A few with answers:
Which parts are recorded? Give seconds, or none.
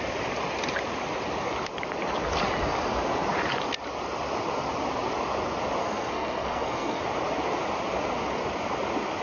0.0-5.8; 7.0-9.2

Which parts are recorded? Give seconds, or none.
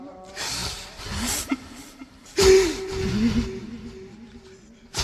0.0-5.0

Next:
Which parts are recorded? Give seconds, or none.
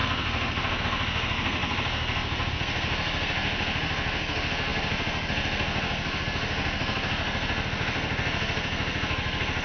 none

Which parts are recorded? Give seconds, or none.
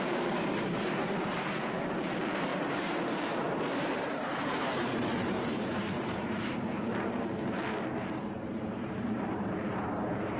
none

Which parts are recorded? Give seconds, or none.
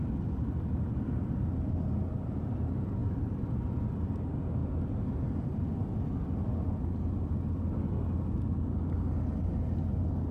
0.0-10.3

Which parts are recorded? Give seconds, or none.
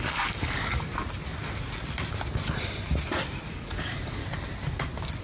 0.9-3.5; 4.2-5.2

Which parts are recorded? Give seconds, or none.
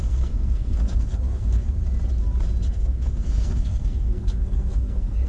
1.8-2.7